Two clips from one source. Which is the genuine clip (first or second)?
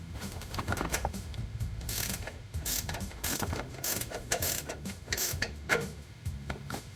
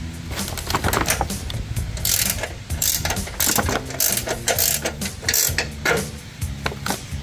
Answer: second